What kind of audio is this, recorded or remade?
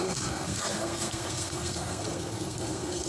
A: remade